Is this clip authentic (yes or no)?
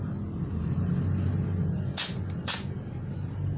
yes